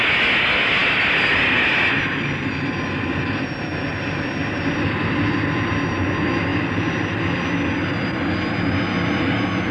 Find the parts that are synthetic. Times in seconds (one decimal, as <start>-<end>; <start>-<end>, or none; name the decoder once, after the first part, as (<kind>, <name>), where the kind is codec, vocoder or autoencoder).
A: 3.9-4.6 (vocoder, BigVGAN v2)